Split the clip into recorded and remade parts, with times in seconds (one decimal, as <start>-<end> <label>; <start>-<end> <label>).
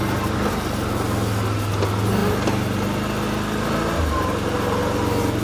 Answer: 0.0-5.4 recorded